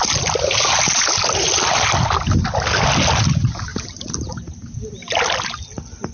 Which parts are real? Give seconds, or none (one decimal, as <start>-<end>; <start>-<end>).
0.0-6.1